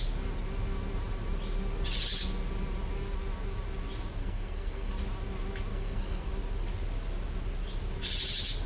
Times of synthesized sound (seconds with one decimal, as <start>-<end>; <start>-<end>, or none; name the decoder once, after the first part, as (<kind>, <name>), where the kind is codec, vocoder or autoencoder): 4.2-4.9 (codec, SNAC); 5.7-6.3

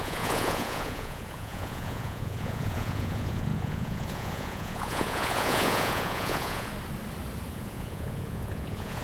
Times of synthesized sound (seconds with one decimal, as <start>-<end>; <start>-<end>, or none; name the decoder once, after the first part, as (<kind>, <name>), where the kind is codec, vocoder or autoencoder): 0.0-6.7 (vocoder, Vocos); 7.5-9.0